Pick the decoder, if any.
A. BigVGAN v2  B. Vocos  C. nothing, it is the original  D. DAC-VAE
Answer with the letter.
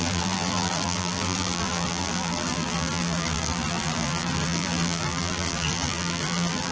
A